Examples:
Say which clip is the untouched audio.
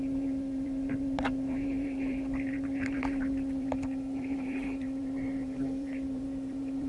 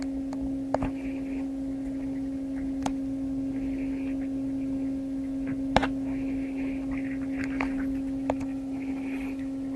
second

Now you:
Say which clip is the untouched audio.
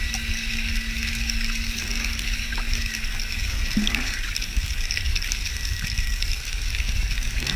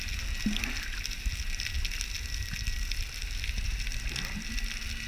second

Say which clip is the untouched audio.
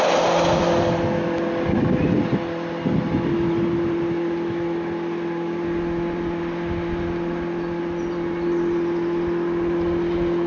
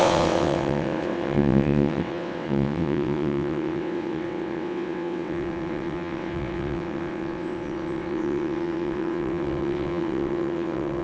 first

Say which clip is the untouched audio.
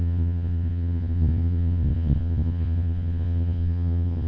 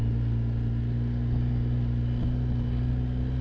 second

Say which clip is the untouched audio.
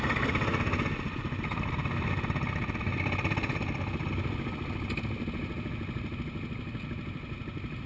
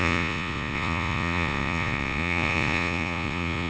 first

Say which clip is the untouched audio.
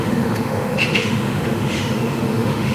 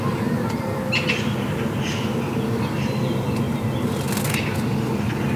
second